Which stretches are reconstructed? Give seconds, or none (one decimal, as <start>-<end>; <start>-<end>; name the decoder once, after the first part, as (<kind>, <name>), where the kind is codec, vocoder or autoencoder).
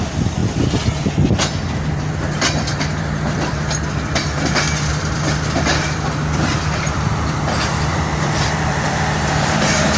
0.0-0.4 (vocoder, BigVGAN v2); 1.5-3.6; 4.6-10.0